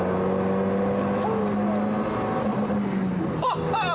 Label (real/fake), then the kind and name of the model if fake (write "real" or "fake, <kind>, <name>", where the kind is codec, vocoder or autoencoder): real